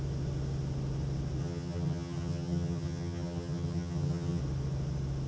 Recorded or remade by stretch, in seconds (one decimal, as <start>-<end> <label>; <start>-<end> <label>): 0.0-1.4 recorded; 1.4-4.4 remade; 4.4-5.3 recorded